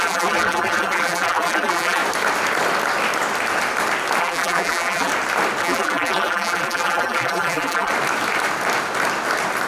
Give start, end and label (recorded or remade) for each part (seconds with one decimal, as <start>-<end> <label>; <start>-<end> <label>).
0.0-2.0 remade; 2.0-4.2 recorded; 4.2-5.1 remade; 5.1-5.6 recorded; 5.6-7.9 remade; 7.9-9.7 recorded